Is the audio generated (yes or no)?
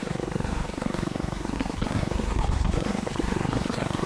yes